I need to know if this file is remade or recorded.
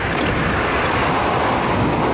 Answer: recorded